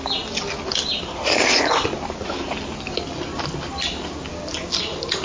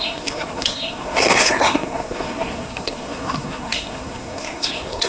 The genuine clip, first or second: first